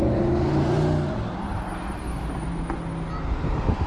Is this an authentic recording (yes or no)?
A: yes